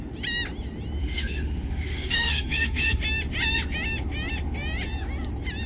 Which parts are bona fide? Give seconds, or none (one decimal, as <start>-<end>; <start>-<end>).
0.0-1.0; 3.0-5.7